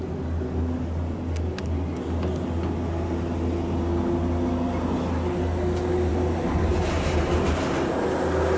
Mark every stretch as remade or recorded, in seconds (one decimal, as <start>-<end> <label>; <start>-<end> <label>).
0.0-8.6 recorded